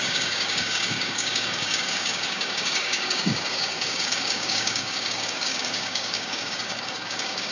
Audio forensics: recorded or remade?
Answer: remade